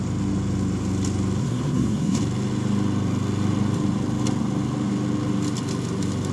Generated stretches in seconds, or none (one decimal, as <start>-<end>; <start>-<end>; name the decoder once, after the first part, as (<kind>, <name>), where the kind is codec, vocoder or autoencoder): 1.4-2.2 (codec, SNAC)